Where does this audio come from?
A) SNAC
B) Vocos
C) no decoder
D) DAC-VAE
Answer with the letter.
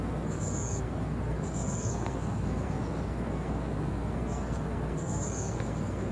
A